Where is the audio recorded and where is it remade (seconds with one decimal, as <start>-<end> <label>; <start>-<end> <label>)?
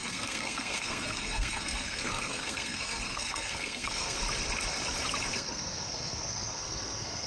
0.0-4.2 remade; 4.2-5.3 recorded; 5.3-7.3 remade